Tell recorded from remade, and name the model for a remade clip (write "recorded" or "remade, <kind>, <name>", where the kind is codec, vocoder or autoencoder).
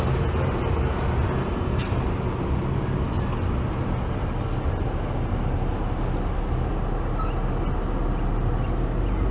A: recorded